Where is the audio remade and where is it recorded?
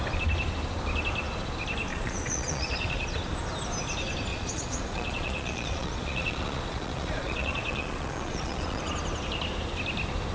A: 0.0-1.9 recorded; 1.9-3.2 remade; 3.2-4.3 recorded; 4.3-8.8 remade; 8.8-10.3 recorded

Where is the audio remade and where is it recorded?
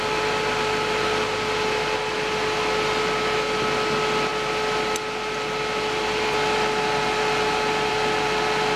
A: 0.0-8.8 recorded